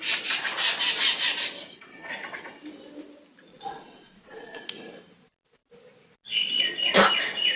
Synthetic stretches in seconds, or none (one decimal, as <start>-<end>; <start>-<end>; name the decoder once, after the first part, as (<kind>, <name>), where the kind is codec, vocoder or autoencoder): 3.5-4.6 (vocoder, Vocos)